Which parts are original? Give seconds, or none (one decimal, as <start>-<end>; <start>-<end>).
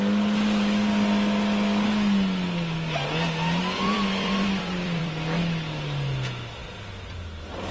0.0-3.6; 5.1-7.7